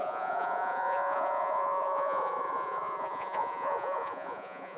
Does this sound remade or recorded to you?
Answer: remade